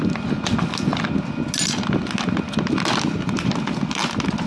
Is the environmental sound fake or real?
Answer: real